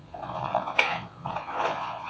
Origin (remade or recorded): remade